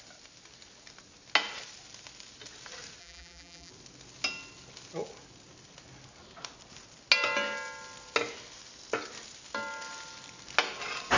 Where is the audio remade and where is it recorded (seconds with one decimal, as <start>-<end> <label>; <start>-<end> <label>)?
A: 0.0-3.0 recorded; 3.0-3.7 remade; 3.7-11.2 recorded